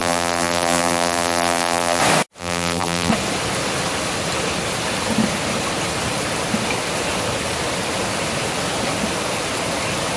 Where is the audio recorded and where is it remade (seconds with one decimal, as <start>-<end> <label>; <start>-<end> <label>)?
0.0-2.0 remade; 2.0-2.4 recorded; 2.4-3.1 remade; 3.1-10.2 recorded